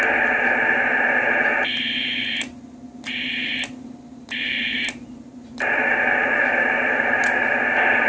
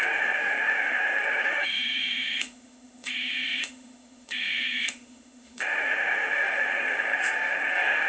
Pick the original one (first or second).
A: first